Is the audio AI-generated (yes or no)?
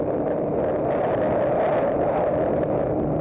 no